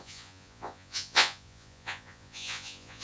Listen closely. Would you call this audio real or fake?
fake